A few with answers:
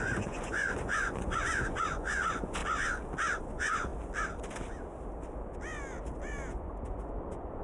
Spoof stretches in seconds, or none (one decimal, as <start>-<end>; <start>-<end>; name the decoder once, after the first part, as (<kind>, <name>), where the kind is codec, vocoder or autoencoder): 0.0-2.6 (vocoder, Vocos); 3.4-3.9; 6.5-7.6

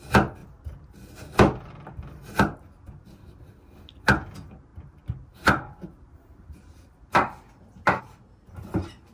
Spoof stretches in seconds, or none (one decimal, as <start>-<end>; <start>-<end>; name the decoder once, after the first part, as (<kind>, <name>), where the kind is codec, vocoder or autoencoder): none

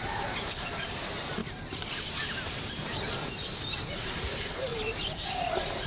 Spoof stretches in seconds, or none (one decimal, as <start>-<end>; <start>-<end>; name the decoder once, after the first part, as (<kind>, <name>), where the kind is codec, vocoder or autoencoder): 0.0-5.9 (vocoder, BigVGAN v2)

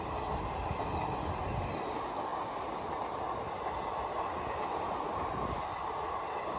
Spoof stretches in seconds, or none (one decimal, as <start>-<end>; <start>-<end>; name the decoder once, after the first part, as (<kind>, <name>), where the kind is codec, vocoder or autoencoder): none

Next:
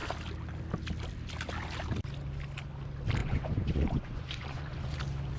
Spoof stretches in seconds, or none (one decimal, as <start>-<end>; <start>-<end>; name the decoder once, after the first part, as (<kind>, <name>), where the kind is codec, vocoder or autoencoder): 3.2-5.0 (vocoder, Vocos)

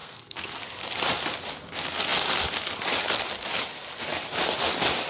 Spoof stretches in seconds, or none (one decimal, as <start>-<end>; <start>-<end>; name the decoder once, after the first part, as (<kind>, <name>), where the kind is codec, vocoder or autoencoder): 0.0-0.6 (codec, SNAC)

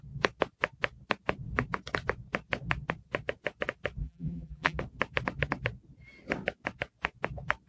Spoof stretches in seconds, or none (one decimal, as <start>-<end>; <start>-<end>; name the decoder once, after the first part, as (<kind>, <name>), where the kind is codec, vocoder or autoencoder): 4.0-4.8 (vocoder, BigVGAN v2)